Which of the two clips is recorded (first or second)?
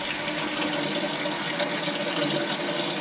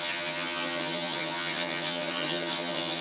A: first